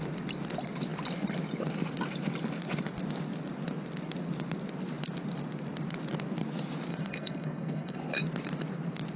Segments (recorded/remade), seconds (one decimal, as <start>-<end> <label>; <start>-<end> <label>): 0.0-6.9 recorded; 6.9-8.0 remade; 8.0-9.2 recorded